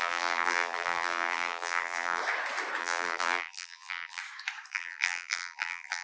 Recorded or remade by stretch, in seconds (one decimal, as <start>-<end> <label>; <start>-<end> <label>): 0.0-2.2 remade; 2.2-2.8 recorded; 2.8-4.2 remade; 4.2-4.7 recorded; 4.7-6.0 remade